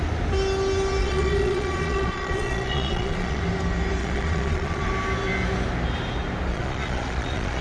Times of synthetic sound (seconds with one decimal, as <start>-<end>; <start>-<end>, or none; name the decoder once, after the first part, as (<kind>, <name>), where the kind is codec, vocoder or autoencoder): 1.0-3.4 (vocoder, Vocos); 4.0-4.9; 6.5-7.6

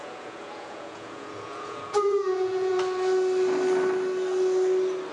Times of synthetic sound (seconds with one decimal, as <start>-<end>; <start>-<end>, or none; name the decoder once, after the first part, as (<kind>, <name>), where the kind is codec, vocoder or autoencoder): 0.0-2.7 (vocoder, Vocos)

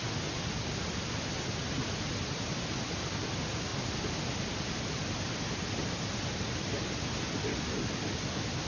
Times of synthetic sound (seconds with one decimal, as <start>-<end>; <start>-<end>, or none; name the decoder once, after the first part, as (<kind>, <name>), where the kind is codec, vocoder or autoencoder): none

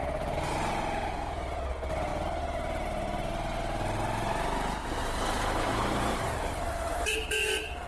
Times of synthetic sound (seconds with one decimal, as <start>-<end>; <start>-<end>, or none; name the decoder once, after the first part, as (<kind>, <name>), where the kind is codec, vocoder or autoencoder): none

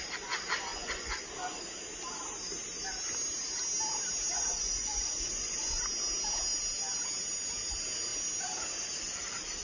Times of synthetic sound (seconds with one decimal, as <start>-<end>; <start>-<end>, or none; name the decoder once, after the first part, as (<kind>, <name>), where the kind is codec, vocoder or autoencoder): 0.7-1.2 (vocoder, Vocos); 4.3-5.8

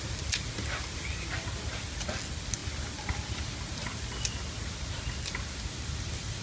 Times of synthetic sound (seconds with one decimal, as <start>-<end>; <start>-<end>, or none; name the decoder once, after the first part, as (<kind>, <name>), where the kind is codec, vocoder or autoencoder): none